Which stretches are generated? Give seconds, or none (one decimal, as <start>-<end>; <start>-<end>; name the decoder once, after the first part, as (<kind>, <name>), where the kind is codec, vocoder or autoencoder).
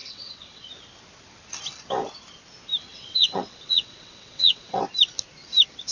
0.0-0.7 (vocoder, WaveNeXt); 2.9-4.8